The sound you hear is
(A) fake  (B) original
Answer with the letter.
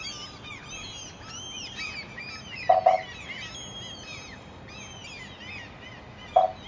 B